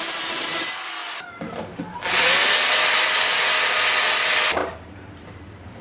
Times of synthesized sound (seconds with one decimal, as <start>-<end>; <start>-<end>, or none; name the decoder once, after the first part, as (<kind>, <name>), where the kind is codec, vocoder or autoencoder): 4.6-5.8 (vocoder, BigVGAN v2)